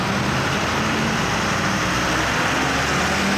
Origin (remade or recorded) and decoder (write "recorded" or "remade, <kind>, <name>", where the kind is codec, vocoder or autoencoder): recorded